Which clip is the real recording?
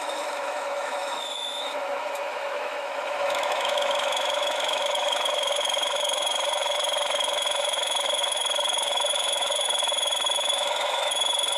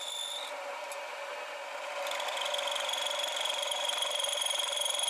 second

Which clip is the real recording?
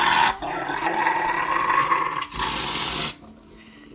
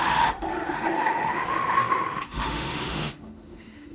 first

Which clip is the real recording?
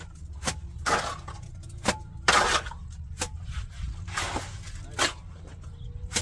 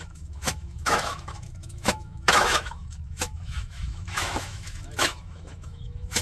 first